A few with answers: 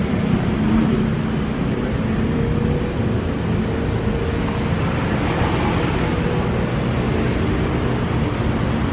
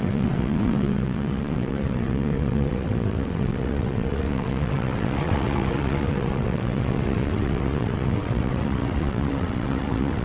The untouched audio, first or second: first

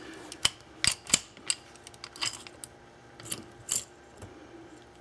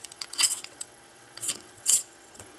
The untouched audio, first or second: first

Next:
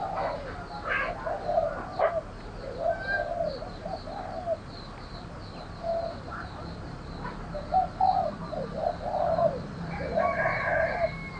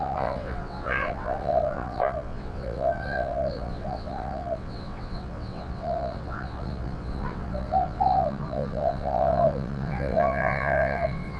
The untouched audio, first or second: first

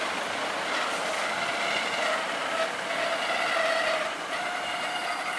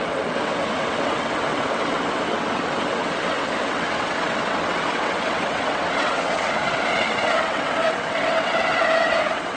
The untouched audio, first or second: first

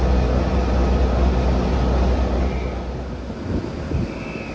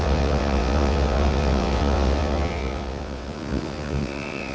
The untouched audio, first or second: first